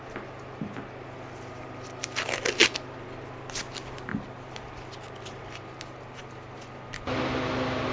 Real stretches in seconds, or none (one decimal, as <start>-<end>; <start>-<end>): 0.0-7.9